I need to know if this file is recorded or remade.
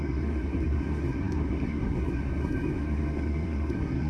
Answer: remade